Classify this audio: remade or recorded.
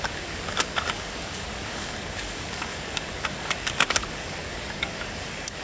remade